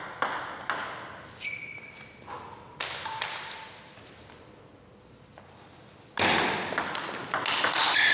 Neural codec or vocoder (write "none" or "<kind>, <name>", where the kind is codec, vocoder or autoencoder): none